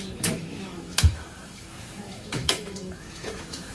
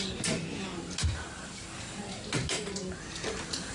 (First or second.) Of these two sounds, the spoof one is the first